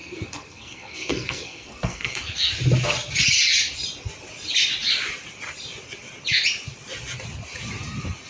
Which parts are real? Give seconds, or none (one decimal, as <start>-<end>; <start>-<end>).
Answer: 2.5-8.3